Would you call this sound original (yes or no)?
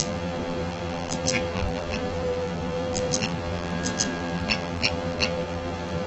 no